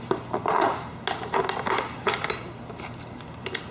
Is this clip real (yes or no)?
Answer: yes